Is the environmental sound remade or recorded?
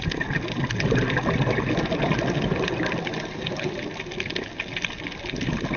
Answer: recorded